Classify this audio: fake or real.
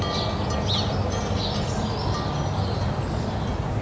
real